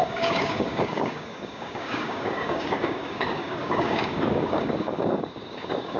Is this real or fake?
fake